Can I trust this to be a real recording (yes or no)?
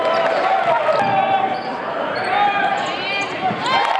no